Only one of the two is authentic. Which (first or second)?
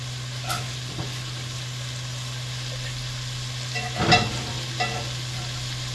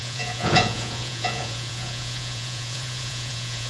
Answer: first